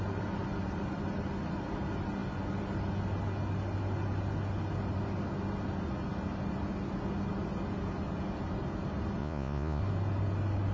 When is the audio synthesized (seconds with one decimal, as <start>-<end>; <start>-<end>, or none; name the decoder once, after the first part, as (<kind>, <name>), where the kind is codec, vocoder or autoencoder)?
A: 9.2-9.8 (vocoder, Vocos)